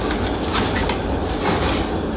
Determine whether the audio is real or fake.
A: real